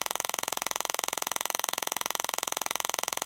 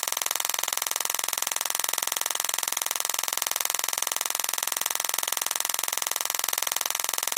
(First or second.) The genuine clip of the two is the second